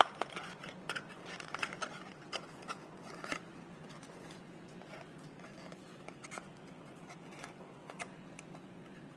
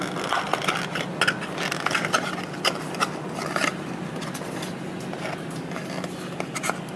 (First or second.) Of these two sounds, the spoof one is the first